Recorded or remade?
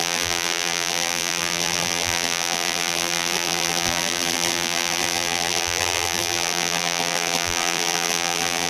remade